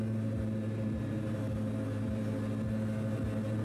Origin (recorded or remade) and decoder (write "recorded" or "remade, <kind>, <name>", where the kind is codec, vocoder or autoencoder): recorded